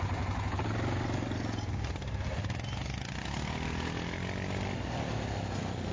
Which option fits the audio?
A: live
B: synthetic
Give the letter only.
A